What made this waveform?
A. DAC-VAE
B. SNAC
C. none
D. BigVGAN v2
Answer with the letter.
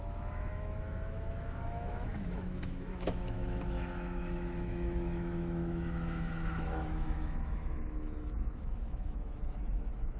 A